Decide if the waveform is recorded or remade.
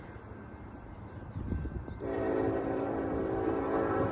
remade